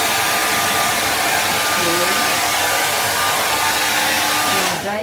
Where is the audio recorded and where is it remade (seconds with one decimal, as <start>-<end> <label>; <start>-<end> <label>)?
0.0-0.4 recorded; 0.4-3.4 remade; 3.4-5.0 recorded